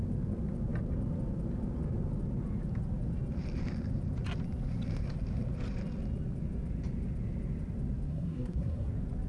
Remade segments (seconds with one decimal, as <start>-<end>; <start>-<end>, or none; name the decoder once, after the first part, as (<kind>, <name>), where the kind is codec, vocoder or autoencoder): 8.1-8.9 (codec, SNAC)